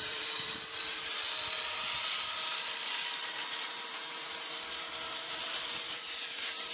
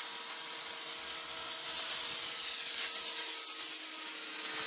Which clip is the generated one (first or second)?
first